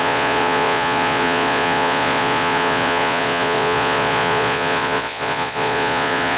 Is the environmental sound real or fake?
fake